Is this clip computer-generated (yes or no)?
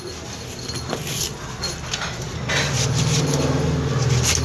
no